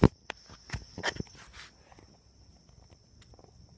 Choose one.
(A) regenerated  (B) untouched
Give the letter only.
B